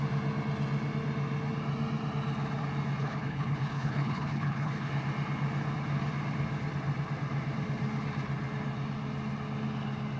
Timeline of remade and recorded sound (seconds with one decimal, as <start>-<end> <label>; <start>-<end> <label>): 0.0-3.0 recorded; 3.0-4.9 remade; 4.9-10.2 recorded